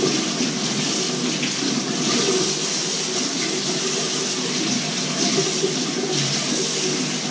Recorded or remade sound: recorded